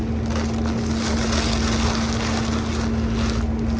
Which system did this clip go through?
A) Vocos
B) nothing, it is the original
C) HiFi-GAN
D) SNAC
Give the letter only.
B